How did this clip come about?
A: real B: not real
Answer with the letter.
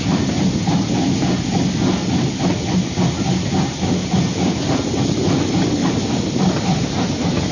A